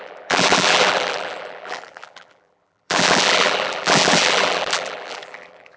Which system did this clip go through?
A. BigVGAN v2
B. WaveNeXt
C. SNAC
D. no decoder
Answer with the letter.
A